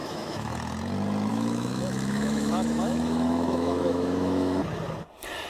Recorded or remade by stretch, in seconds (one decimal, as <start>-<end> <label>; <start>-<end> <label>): 0.0-0.6 remade; 0.6-1.3 recorded; 1.3-4.6 remade; 4.6-5.5 recorded